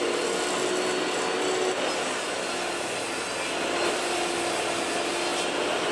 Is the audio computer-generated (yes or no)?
no